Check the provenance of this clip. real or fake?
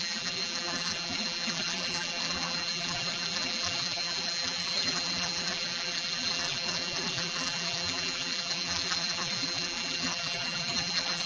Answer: fake